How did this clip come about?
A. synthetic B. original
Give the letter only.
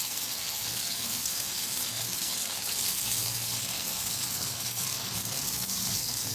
A